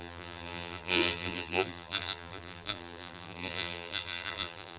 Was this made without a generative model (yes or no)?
no